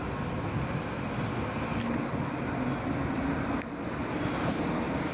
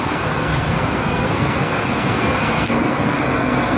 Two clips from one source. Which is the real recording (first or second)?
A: first